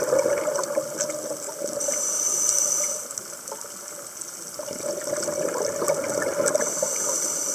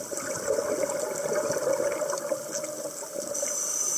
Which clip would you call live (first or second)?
first